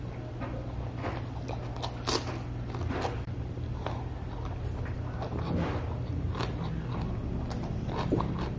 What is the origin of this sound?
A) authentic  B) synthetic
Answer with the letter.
B